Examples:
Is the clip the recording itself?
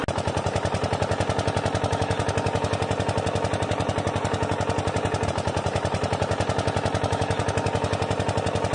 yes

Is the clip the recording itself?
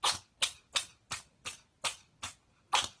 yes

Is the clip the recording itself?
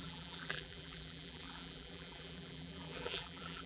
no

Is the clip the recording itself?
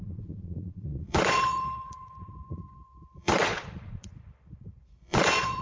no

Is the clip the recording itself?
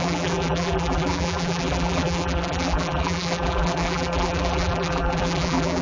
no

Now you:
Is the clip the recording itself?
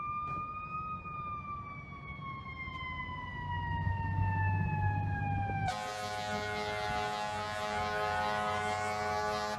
yes